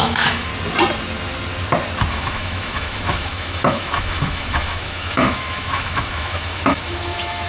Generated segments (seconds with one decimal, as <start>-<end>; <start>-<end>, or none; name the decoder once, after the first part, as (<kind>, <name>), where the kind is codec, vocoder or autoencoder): 0.0-0.5 (autoencoder, DAC-VAE); 2.1-7.5